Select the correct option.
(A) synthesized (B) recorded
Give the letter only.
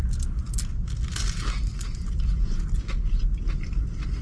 B